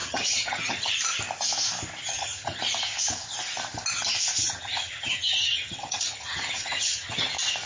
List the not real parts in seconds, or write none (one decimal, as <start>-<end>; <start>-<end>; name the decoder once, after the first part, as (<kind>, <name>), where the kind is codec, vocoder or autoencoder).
0.0-0.9 (vocoder, HiFi-GAN); 2.1-2.6; 4.4-7.3